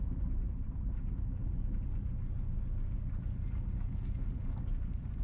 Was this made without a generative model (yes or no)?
yes